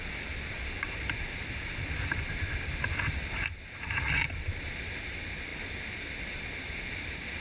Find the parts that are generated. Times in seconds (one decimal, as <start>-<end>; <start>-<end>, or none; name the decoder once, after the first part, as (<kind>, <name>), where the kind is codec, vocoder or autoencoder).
none